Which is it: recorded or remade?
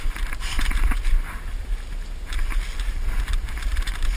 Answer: remade